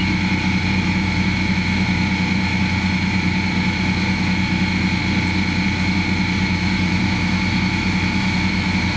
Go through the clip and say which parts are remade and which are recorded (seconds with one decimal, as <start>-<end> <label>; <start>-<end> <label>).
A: 0.0-5.0 remade; 5.0-5.7 recorded; 5.7-9.0 remade